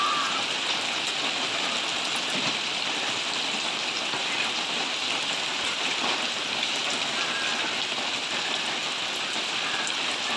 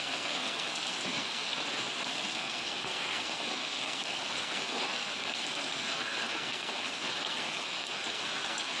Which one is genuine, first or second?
first